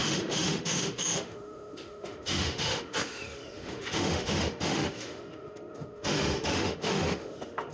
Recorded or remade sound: remade